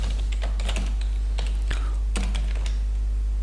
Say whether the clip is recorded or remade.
recorded